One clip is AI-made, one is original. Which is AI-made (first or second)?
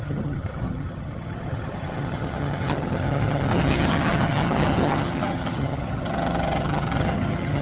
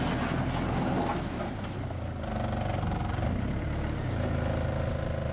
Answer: first